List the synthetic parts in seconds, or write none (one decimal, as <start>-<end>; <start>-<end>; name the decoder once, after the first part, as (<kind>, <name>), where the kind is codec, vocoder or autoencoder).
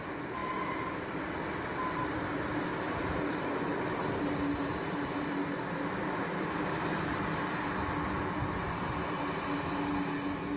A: none